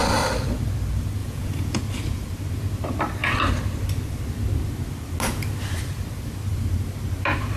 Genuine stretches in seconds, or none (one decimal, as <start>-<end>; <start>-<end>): 0.0-1.2; 1.8-7.6